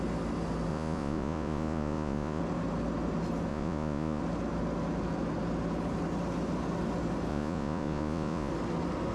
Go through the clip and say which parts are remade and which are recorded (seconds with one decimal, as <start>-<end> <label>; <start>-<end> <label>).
0.0-0.7 recorded; 0.7-2.4 remade; 2.4-3.5 recorded; 3.5-4.2 remade; 4.2-7.3 recorded; 7.3-8.5 remade; 8.5-9.1 recorded